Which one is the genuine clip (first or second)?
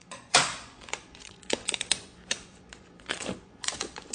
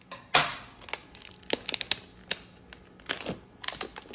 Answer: second